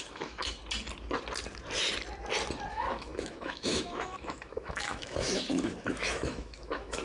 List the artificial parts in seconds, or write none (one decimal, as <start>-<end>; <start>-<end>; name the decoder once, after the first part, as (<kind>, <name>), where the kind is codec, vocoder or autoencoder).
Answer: 0.0-0.6 (autoencoder, DAC-VAE); 2.7-7.0

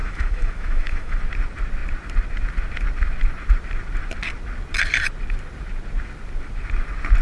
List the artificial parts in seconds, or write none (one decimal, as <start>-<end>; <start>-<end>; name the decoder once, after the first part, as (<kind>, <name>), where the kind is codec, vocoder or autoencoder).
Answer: 0.0-1.2 (autoencoder, DAC-VAE)